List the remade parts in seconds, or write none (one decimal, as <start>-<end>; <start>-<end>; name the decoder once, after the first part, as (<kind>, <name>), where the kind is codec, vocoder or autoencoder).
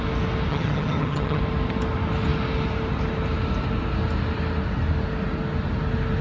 0.5-1.4 (vocoder, HiFi-GAN)